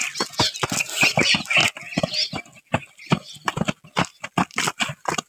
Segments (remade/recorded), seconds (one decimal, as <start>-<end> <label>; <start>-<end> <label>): 0.0-5.3 recorded